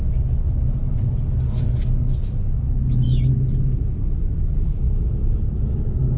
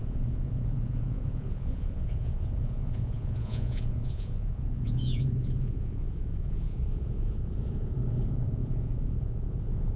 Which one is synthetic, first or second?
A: second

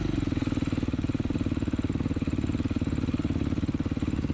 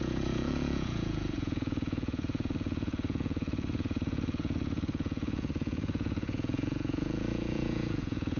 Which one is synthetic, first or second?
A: second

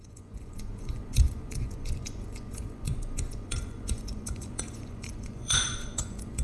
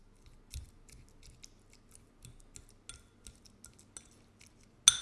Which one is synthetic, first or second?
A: first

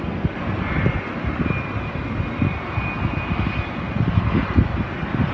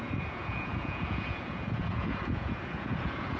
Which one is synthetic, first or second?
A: second